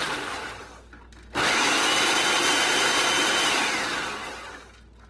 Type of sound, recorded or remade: recorded